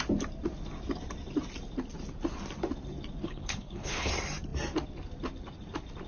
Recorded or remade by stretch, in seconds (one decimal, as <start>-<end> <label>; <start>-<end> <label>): 0.0-3.2 recorded; 3.2-4.1 remade; 4.1-6.1 recorded